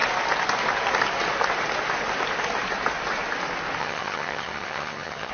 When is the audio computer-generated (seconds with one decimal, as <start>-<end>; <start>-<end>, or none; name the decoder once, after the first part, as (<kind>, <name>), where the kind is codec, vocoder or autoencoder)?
3.8-5.3 (vocoder, HiFi-GAN)